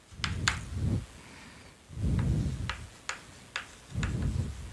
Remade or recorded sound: recorded